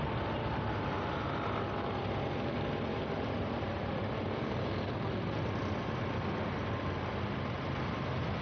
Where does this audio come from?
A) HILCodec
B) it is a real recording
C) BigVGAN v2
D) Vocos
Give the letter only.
B